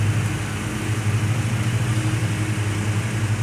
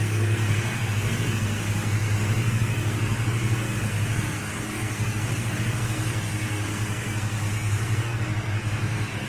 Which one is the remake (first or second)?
second